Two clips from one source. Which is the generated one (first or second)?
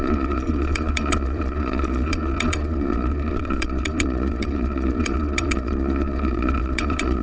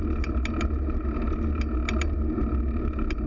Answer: first